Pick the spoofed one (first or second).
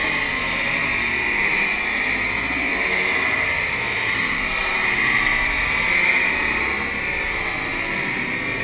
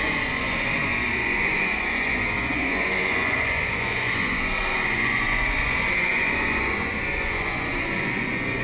second